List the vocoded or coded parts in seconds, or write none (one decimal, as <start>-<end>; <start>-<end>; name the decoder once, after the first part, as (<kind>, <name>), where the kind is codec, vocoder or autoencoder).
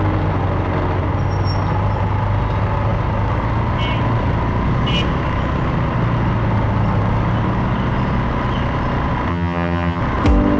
9.3-10.0 (vocoder, HiFi-GAN)